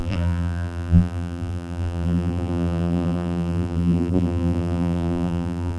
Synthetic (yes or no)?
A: yes